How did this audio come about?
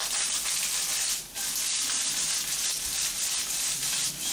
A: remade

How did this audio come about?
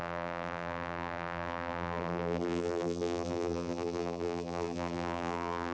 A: remade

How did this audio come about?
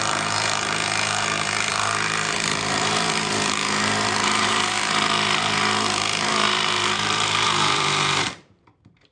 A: remade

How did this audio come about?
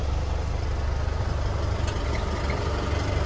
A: recorded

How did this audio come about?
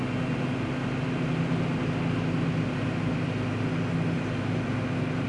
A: recorded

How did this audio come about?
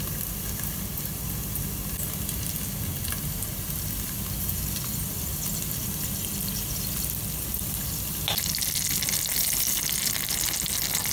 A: recorded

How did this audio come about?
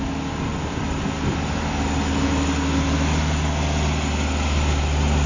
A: recorded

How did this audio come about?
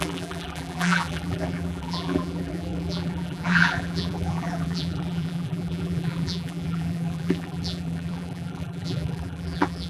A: remade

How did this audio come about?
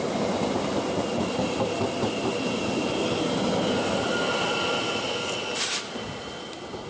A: recorded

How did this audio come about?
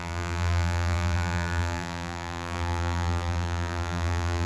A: remade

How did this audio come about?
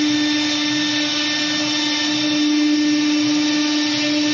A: recorded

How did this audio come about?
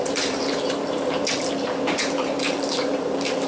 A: remade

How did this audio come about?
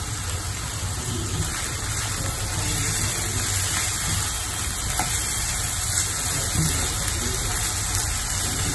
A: recorded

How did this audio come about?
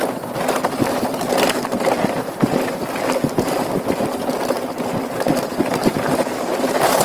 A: recorded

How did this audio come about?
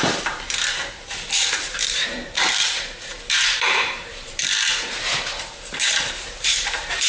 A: remade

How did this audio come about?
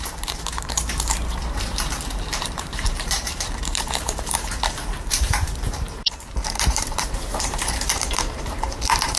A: remade